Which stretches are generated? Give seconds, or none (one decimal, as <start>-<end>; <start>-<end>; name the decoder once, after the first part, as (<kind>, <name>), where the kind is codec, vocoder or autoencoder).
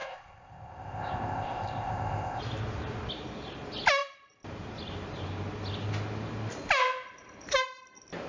0.0-2.4 (codec, ZipCodec)